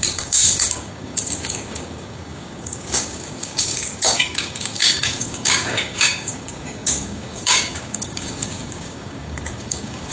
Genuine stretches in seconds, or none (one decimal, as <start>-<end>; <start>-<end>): none